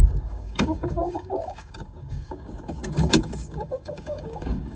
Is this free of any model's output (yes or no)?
no